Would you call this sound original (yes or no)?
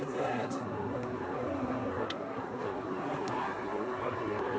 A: no